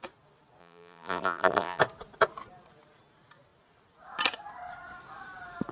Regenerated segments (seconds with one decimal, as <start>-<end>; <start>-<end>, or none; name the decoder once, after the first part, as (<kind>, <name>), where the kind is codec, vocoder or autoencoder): 0.6-1.8 (vocoder, BigVGAN v2)